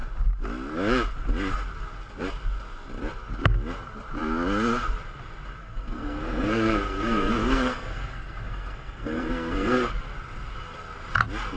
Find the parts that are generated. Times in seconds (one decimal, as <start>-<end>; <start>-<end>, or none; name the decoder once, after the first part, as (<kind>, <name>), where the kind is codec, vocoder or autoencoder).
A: 5.6-9.9 (codec, SNAC)